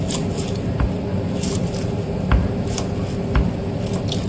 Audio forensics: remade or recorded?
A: recorded